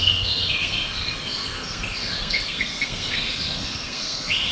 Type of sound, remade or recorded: remade